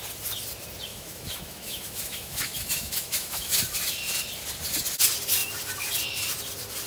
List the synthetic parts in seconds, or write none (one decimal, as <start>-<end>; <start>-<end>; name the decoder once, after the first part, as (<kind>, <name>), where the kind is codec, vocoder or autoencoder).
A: 0.9-3.5 (autoencoder, DAC-VAE)

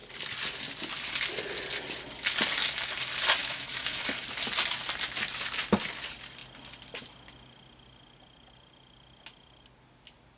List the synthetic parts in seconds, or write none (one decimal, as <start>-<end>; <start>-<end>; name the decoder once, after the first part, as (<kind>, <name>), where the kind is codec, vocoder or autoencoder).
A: 3.4-4.0 (autoencoder, DAC-VAE)

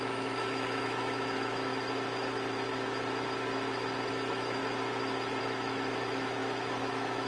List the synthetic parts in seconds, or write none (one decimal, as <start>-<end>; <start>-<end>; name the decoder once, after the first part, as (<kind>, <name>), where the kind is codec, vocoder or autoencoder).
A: 0.0-1.7 (autoencoder, DAC-VAE); 4.1-4.6; 5.4-7.3

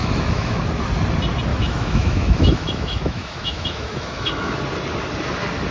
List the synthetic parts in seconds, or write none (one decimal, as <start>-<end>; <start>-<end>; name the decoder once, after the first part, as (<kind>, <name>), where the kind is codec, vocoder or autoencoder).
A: 0.0-0.6 (autoencoder, DAC-VAE); 1.5-4.6

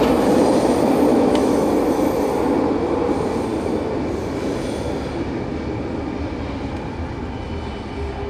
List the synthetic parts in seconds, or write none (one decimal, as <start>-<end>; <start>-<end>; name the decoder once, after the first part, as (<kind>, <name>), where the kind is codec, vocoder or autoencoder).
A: 1.1-1.7 (autoencoder, DAC-VAE)

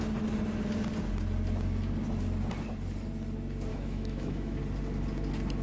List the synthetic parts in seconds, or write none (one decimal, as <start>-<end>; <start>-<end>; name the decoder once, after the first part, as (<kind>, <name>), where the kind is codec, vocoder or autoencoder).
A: 3.7-4.6 (autoencoder, DAC-VAE)

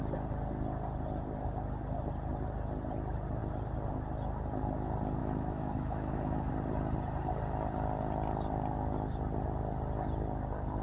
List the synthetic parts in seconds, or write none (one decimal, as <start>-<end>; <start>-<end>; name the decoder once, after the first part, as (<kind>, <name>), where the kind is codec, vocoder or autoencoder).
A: 5.2-6.5 (autoencoder, DAC-VAE)

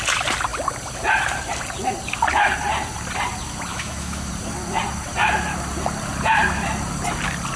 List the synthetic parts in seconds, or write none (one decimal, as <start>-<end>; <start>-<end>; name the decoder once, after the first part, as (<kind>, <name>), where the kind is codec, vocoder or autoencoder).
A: 3.7-4.3 (autoencoder, DAC-VAE)